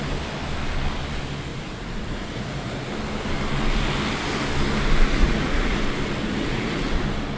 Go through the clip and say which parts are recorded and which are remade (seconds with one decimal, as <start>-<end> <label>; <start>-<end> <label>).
0.0-1.5 recorded; 1.5-2.9 remade; 2.9-5.2 recorded; 5.2-5.8 remade; 5.8-6.2 recorded; 6.2-7.0 remade; 7.0-7.4 recorded

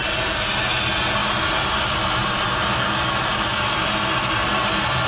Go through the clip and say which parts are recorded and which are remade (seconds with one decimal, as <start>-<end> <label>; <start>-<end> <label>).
0.0-5.1 recorded

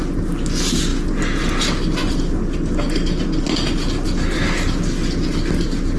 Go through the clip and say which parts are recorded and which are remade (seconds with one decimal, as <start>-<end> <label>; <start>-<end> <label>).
0.0-6.0 recorded

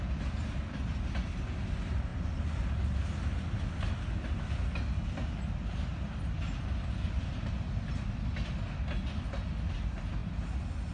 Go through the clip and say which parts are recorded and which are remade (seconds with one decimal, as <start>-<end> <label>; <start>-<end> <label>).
0.0-10.9 recorded